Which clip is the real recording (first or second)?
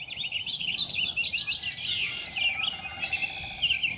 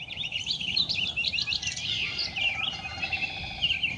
first